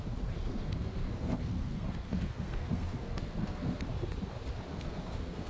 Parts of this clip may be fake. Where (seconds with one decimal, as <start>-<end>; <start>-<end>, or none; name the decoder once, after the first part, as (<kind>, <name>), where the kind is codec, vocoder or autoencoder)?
0.5-3.8 (codec, SNAC); 4.7-5.5